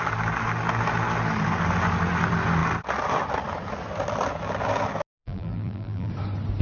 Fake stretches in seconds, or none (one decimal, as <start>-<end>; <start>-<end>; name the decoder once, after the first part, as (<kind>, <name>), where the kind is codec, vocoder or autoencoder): 5.2-6.1 (vocoder, BigVGAN v2)